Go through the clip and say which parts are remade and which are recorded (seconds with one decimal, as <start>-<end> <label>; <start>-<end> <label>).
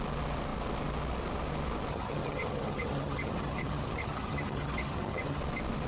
0.0-1.9 recorded; 1.9-5.4 remade; 5.4-5.9 recorded